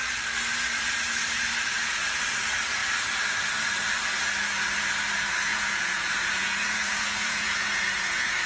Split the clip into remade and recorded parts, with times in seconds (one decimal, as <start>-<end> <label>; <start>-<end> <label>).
0.0-5.5 recorded; 5.5-8.5 remade